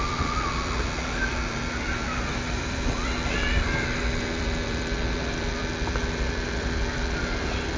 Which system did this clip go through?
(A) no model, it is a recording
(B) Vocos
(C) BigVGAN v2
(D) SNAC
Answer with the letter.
C